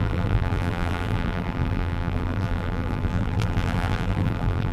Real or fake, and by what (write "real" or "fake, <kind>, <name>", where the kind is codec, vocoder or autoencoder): fake, vocoder, BigVGAN v2